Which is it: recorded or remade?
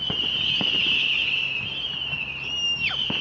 remade